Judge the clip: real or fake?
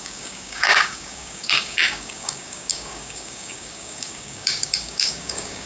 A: fake